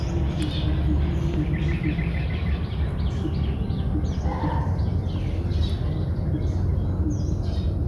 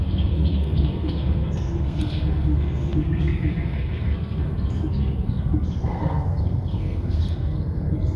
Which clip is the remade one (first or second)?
second